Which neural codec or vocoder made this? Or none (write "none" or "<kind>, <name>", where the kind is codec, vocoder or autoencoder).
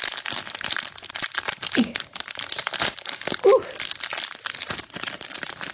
none